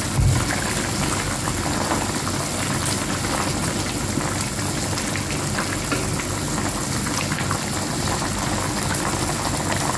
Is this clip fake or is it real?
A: real